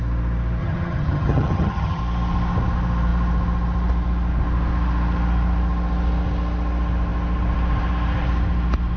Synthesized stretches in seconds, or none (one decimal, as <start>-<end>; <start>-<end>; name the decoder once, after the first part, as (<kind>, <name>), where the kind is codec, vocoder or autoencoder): 0.6-2.0 (vocoder, HiFi-GAN)